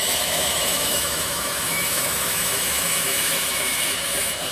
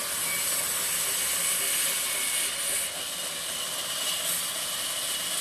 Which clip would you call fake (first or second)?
first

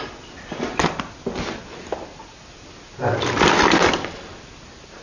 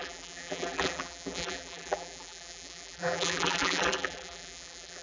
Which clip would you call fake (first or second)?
second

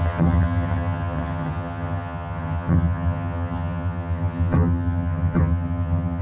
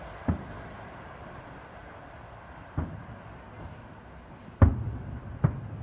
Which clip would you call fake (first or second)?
first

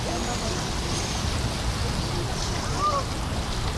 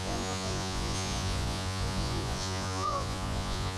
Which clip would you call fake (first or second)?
second